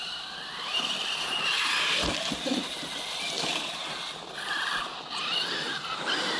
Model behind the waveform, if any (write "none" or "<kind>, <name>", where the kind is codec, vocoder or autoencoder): none